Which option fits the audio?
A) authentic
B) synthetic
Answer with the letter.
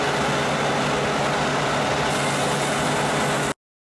A